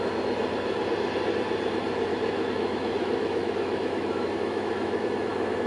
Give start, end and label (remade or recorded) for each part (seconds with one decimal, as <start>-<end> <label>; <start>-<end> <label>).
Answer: 0.0-2.1 recorded; 2.1-5.3 remade; 5.3-5.7 recorded